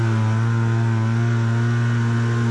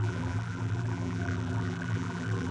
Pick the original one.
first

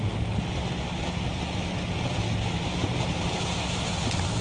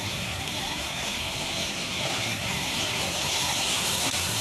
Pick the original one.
first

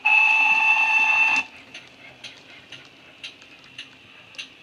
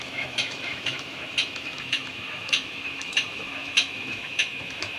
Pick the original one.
first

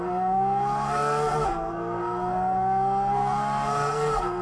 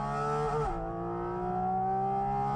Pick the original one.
second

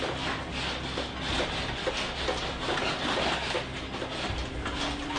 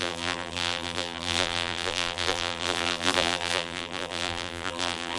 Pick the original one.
first